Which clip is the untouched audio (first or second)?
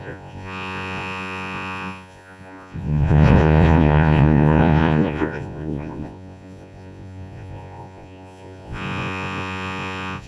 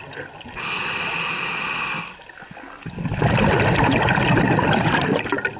second